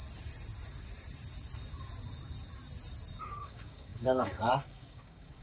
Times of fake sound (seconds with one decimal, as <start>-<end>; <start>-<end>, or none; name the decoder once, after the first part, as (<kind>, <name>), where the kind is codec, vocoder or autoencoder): 3.2-5.4 (codec, DAC)